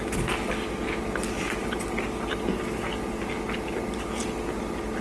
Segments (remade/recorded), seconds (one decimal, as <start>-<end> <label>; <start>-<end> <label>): 0.0-5.0 recorded